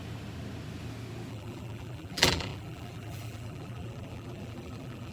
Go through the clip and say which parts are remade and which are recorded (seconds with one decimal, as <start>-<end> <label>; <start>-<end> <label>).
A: 0.0-1.3 recorded; 1.3-5.1 remade